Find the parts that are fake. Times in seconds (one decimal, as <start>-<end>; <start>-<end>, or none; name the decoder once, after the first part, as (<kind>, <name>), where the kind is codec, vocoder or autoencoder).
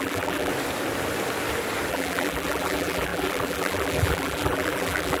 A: 0.0-0.5 (vocoder, BigVGAN v2); 1.9-5.2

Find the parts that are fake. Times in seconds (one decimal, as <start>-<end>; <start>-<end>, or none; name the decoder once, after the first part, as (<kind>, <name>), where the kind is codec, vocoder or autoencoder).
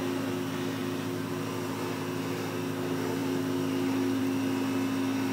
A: 0.8-1.3 (vocoder, BigVGAN v2)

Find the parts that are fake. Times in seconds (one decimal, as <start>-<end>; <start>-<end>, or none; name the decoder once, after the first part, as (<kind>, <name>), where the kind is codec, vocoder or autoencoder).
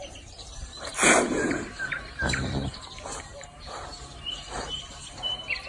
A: 0.0-0.9 (vocoder, BigVGAN v2); 1.8-5.7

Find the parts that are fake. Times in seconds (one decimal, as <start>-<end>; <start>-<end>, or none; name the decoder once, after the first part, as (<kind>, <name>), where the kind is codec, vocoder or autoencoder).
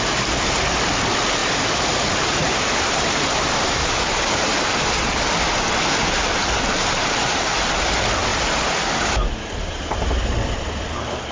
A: 1.4-4.8 (vocoder, BigVGAN v2); 7.2-7.9; 8.3-10.8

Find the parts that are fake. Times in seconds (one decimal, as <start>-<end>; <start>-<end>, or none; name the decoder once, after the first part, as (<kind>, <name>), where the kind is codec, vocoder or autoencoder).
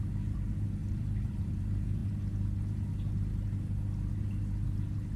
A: 0.8-1.6 (vocoder, BigVGAN v2)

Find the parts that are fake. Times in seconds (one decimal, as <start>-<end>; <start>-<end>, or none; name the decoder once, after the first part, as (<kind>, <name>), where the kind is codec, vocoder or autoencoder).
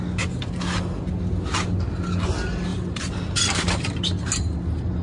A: 2.7-4.0 (vocoder, BigVGAN v2)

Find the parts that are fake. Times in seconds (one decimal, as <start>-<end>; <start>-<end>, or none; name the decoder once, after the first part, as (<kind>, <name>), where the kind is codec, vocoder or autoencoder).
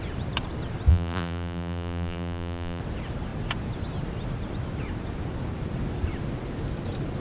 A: 0.9-2.8 (vocoder, BigVGAN v2)